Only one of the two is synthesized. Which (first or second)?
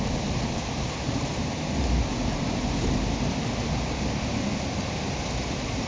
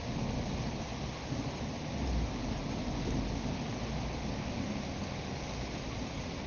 first